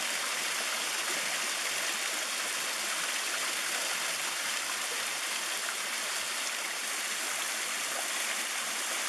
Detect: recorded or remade recorded